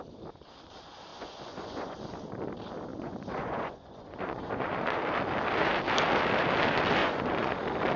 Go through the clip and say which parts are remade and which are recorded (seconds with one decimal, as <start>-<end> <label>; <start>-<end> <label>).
0.0-1.1 recorded; 1.1-2.0 remade; 2.0-2.9 recorded; 2.9-5.0 remade; 5.0-7.0 recorded; 7.0-7.6 remade; 7.6-8.0 recorded